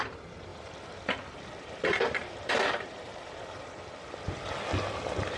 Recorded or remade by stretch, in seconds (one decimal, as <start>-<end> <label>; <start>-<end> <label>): 0.0-0.5 recorded; 0.5-3.7 remade; 3.7-5.4 recorded